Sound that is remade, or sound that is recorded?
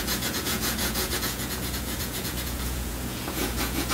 remade